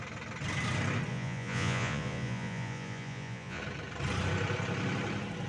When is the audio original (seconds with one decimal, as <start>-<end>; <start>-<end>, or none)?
0.0-1.1; 3.6-5.5